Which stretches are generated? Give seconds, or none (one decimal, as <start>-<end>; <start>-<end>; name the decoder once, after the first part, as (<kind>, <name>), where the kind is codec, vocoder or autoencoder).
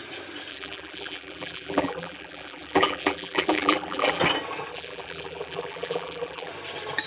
0.5-4.2 (vocoder, BigVGAN v2); 4.7-6.5